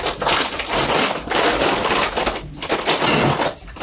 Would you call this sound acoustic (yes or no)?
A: yes